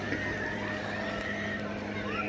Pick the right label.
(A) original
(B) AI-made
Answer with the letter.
A